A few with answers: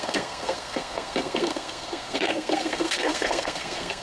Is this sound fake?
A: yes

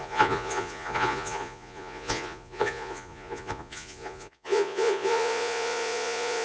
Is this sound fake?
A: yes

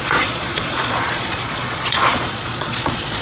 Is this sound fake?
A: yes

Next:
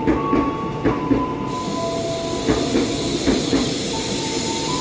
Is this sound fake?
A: no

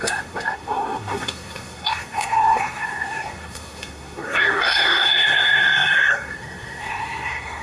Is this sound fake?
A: yes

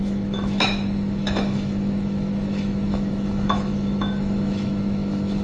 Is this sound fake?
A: yes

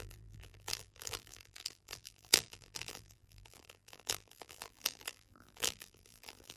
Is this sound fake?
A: yes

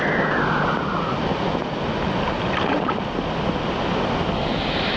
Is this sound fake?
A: no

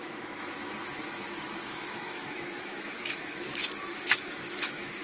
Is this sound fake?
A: yes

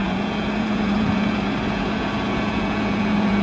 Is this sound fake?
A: yes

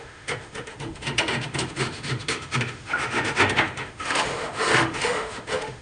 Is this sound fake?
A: yes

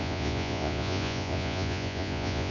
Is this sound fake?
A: yes